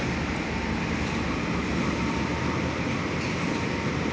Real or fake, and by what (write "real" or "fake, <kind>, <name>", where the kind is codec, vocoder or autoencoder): fake, vocoder, BigVGAN v2